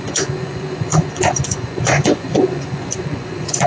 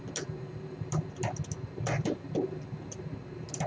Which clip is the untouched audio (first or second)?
second